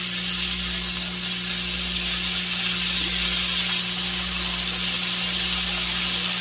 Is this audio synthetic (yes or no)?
no